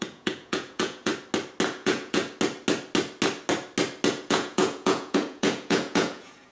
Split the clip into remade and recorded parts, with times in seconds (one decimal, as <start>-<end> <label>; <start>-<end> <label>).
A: 0.0-1.1 remade; 1.1-1.7 recorded; 1.7-2.2 remade; 2.2-4.1 recorded; 4.1-6.5 remade